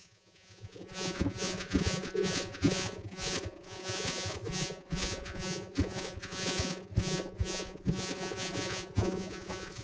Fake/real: fake